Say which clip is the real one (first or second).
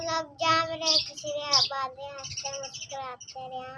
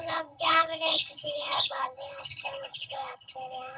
first